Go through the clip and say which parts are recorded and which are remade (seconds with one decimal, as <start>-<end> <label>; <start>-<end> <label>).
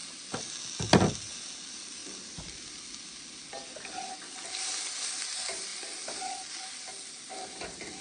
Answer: 0.0-8.0 recorded